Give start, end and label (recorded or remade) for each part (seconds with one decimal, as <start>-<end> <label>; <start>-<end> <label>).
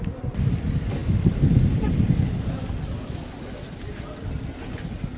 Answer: 0.0-5.2 recorded